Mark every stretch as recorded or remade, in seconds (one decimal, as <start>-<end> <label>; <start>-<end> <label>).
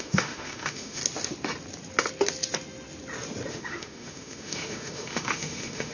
0.0-1.0 remade; 1.0-3.5 recorded; 3.5-5.9 remade